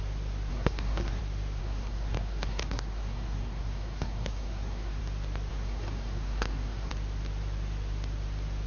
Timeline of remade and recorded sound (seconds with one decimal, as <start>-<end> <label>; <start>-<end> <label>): 0.0-0.5 recorded; 0.5-1.2 remade; 1.2-1.6 recorded; 1.6-5.0 remade; 5.0-5.5 recorded; 5.5-6.9 remade; 6.9-8.7 recorded